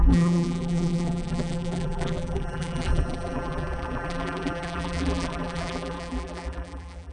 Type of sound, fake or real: fake